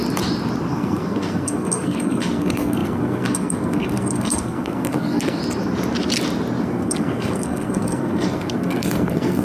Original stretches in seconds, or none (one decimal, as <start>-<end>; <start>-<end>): 0.0-0.7; 5.4-6.6